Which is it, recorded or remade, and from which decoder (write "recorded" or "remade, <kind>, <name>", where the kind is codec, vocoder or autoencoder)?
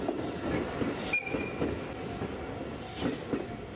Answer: recorded